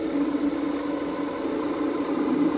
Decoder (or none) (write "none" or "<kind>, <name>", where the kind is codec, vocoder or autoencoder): none